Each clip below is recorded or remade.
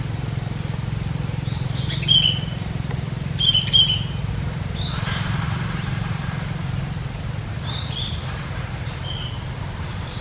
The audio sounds recorded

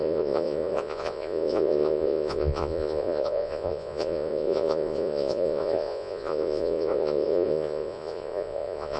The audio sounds remade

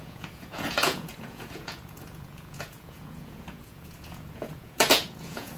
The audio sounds remade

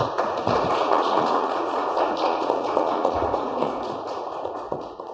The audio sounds remade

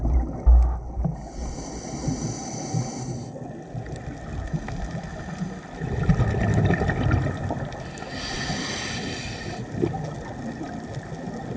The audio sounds recorded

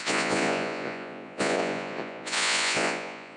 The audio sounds remade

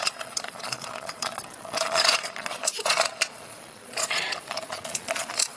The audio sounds remade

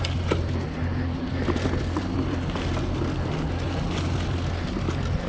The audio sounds recorded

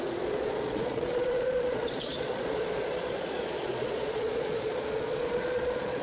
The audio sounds remade